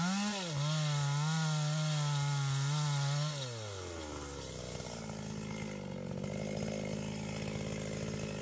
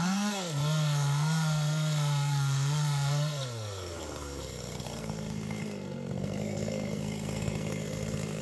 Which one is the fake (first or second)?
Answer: second